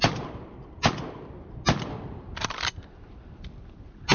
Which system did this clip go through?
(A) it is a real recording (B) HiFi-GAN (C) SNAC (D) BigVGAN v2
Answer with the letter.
A